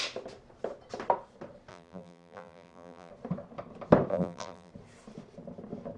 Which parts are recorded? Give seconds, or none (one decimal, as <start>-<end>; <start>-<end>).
0.0-1.7; 3.1-4.1; 4.7-6.0

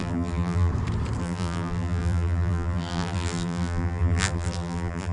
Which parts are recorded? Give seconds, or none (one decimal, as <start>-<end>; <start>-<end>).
0.7-1.2

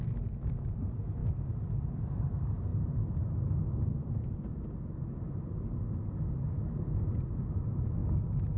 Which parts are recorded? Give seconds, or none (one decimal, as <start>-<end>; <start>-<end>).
0.0-1.2; 2.0-8.6

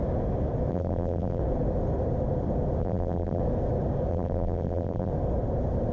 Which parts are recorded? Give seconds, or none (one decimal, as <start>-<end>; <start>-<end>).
0.0-0.7; 1.4-2.8; 3.4-4.1; 5.1-5.9

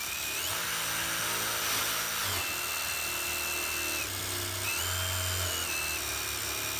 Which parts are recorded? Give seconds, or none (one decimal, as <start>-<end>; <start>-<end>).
0.0-6.8

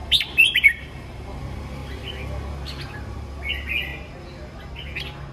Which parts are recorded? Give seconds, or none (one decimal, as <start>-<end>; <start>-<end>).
1.4-5.3

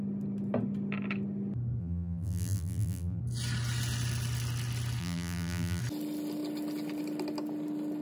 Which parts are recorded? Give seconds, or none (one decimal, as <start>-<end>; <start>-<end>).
0.0-1.8; 3.2-5.0; 5.8-8.0

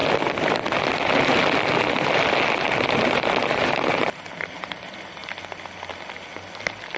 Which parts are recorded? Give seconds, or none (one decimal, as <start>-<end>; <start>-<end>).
0.0-3.4; 4.8-7.0